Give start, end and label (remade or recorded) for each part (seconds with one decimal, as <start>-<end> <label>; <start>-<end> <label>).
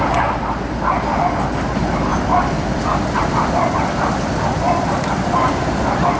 0.0-2.1 recorded; 2.1-2.8 remade; 2.8-6.2 recorded